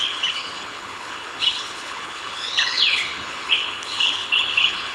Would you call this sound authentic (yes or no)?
no